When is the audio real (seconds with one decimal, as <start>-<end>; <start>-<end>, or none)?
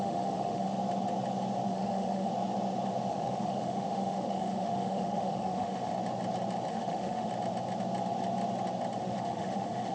0.7-1.7; 2.3-3.1; 5.9-6.7; 7.3-9.0